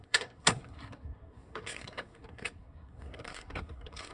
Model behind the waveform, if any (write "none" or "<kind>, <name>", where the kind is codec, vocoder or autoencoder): codec, SNAC